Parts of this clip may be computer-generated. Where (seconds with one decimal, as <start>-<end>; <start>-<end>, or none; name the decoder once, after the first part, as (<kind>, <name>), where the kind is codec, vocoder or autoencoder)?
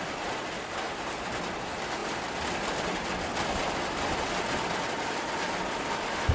none